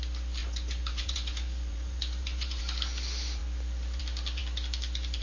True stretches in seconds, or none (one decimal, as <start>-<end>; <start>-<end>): 0.0-0.4; 2.6-5.2